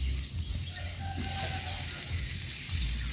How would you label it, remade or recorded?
recorded